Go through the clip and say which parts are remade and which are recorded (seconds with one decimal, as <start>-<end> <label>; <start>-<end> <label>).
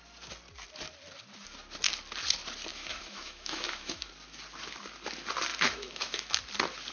0.0-2.7 recorded; 2.7-4.1 remade; 4.1-5.5 recorded; 5.5-6.4 remade; 6.4-6.9 recorded